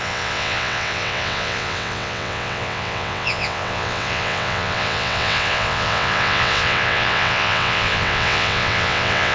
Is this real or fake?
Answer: fake